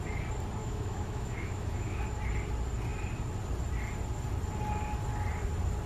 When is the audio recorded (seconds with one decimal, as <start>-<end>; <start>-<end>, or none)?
0.0-0.6; 2.0-5.9